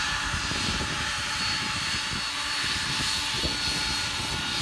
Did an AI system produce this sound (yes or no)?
no